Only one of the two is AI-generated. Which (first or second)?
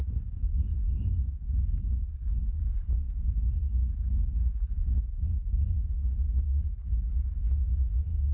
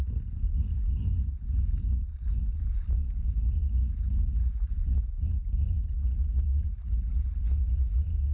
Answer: first